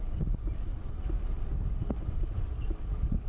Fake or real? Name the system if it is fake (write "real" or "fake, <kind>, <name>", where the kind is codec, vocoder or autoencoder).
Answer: real